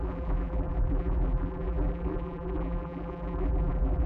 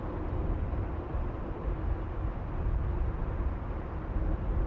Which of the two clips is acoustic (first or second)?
second